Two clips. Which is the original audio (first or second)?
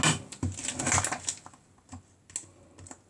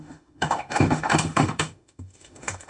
first